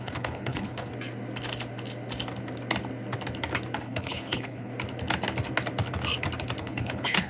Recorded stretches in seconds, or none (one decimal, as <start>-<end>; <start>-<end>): 0.9-3.8; 4.7-6.6